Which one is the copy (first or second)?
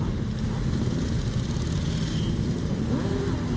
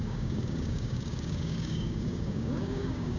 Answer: second